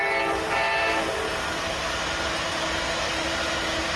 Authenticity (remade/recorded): recorded